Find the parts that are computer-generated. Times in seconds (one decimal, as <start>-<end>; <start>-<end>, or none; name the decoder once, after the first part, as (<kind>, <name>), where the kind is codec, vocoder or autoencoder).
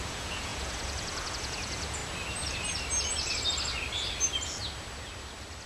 0.0-2.0 (vocoder, Vocos)